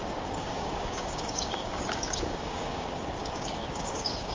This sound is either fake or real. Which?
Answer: fake